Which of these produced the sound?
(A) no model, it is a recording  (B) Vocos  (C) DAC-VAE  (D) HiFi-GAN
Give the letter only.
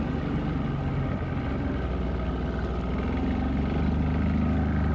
A